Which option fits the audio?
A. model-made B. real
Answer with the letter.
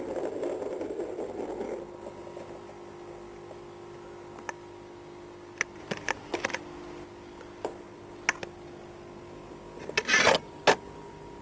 B